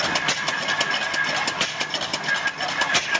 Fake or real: real